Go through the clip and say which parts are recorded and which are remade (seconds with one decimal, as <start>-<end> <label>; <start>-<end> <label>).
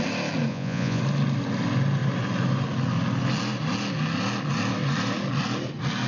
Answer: 0.0-0.5 recorded; 0.5-1.0 remade; 1.0-6.1 recorded